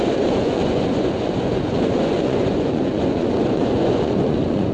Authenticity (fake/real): fake